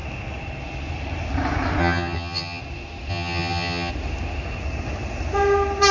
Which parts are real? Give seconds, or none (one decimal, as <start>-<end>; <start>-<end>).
0.0-1.8; 2.6-3.1; 3.9-5.9